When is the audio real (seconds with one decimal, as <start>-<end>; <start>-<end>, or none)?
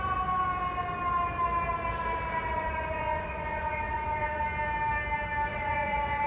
0.0-2.5; 4.4-5.5